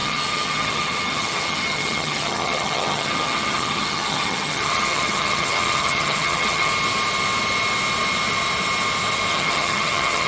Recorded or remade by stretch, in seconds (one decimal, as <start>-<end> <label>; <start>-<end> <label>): 0.0-6.7 remade; 6.7-9.3 recorded; 9.3-10.3 remade